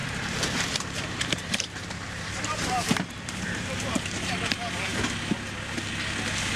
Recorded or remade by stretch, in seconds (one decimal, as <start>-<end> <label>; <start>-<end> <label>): 0.0-4.0 remade; 4.0-6.6 recorded